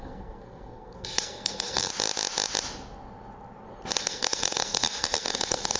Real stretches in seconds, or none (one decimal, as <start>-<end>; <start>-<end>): 1.9-4.0